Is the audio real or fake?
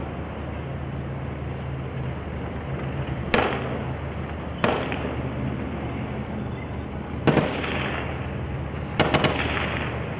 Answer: real